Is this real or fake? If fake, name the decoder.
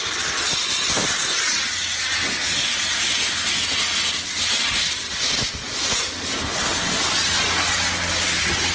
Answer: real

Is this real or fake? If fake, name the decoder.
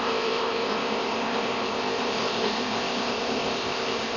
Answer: fake, codec, ZipCodec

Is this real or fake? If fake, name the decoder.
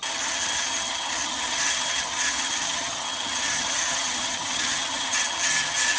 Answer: fake, vocoder, HiFi-GAN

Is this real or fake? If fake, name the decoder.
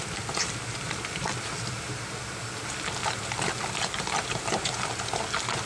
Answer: real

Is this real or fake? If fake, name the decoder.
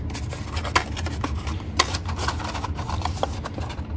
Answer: real